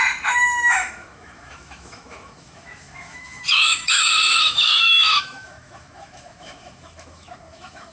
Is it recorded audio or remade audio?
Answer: remade